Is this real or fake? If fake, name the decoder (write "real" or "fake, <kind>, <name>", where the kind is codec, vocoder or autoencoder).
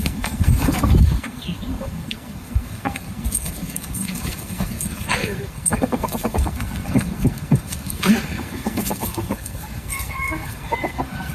fake, codec, SNAC